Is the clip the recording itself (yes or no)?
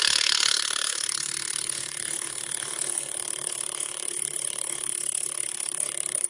no